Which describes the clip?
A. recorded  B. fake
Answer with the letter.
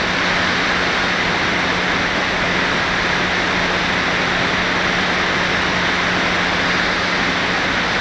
A